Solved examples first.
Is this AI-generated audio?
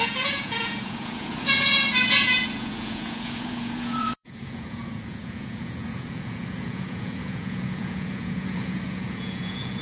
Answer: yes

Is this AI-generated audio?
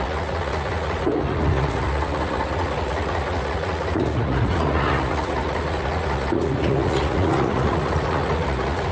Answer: yes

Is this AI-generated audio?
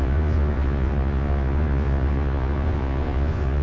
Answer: yes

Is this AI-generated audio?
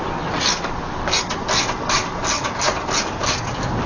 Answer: no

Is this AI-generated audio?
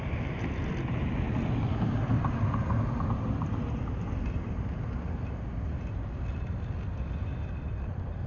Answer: no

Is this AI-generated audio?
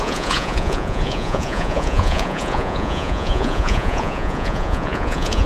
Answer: yes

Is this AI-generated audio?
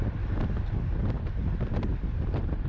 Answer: no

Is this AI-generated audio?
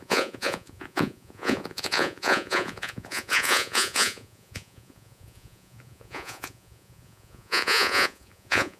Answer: yes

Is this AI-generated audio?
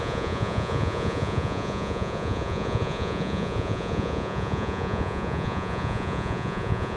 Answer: yes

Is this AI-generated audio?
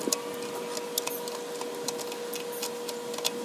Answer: no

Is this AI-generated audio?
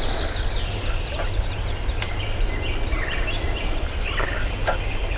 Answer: no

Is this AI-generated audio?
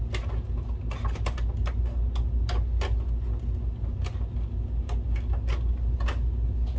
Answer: no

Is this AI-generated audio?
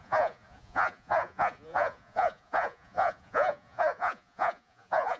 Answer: yes